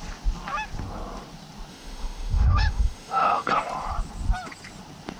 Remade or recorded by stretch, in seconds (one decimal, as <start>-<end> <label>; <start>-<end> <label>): 0.0-1.7 recorded; 1.7-3.5 remade; 3.5-5.2 recorded